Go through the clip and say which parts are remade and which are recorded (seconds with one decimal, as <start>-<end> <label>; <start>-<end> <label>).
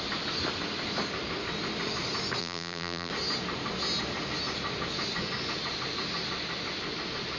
0.0-2.4 recorded; 2.4-3.1 remade; 3.1-7.4 recorded